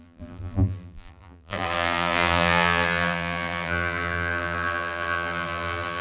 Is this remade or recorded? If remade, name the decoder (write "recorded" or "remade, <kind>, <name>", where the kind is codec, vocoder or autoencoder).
remade, vocoder, BigVGAN v2